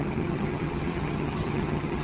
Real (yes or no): no